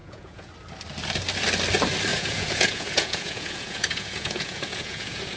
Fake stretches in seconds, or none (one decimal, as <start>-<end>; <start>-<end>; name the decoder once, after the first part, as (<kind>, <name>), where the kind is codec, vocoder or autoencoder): 0.0-0.5 (vocoder, Vocos); 2.1-5.4